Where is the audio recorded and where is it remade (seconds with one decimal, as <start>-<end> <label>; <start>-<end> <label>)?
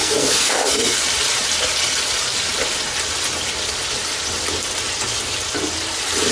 0.0-1.0 remade; 1.0-6.3 recorded